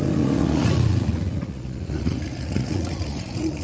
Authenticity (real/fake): fake